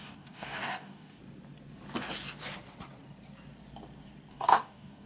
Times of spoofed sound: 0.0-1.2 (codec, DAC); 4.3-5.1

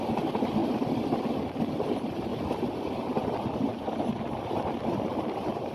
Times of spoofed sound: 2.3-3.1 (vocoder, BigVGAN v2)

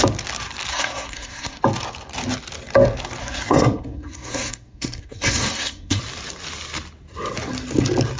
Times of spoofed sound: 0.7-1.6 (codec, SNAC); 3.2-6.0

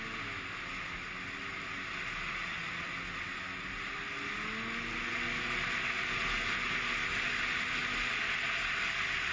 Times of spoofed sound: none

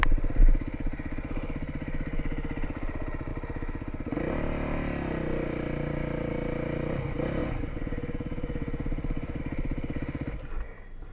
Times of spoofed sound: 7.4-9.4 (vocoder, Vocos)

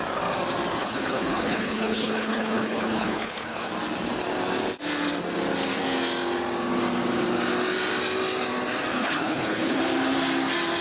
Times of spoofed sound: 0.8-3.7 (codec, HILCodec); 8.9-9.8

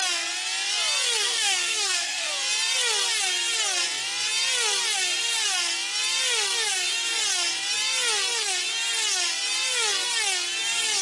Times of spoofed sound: 1.2-2.3 (codec, SNAC)